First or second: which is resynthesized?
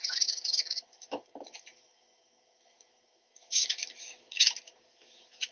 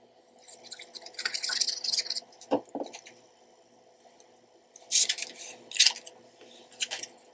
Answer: first